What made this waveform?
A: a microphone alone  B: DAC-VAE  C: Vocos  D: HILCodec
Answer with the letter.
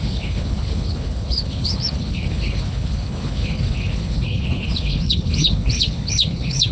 D